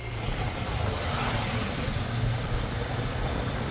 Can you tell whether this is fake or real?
real